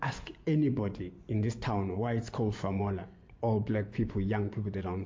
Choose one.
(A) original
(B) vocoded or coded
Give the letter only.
B